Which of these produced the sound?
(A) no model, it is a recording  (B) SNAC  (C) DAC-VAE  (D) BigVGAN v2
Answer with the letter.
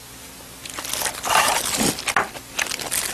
A